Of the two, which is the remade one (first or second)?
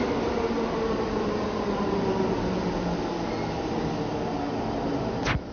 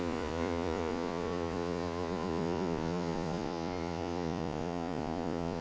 second